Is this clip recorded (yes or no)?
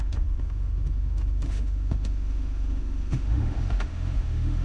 no